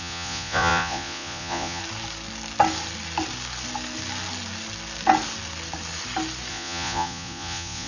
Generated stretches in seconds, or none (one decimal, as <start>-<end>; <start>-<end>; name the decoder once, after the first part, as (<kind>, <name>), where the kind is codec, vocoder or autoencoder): 0.0-1.8 (vocoder, Vocos); 6.5-7.9